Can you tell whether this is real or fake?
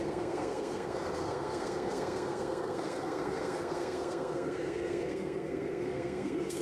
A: fake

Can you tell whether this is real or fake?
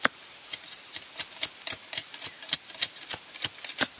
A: real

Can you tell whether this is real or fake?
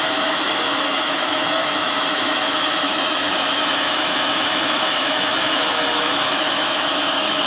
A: fake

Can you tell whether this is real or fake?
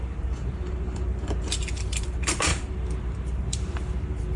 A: fake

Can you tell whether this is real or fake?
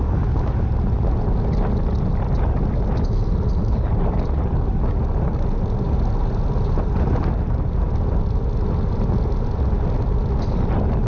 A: real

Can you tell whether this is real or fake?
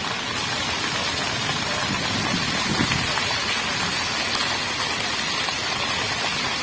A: real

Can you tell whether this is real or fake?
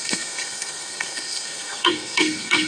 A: fake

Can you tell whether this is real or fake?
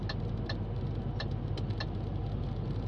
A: real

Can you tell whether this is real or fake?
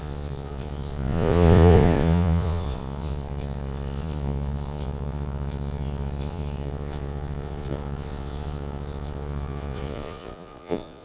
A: fake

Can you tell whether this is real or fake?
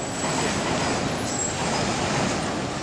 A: real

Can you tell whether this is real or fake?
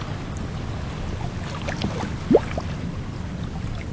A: real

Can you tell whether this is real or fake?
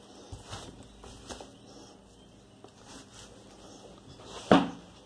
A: real